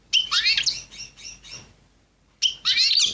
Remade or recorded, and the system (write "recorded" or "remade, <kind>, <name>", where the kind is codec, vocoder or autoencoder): recorded